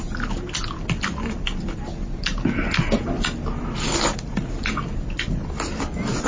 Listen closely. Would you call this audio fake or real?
real